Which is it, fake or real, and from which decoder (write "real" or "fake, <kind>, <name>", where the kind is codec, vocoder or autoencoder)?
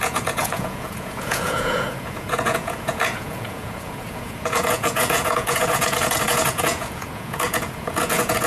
fake, vocoder, Vocos